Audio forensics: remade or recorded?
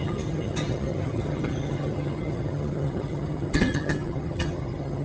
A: remade